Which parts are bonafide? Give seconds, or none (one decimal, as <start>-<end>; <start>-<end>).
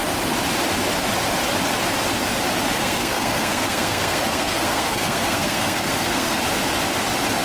0.0-2.8; 6.4-7.4